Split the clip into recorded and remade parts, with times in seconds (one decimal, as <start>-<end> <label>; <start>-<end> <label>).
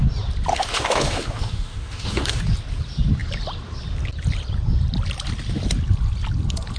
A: 0.0-0.5 recorded; 0.5-2.4 remade; 2.4-6.8 recorded